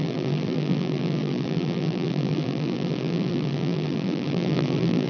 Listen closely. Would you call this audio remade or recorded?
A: remade